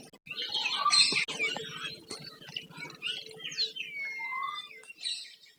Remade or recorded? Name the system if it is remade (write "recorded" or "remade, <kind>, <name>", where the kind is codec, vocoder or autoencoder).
recorded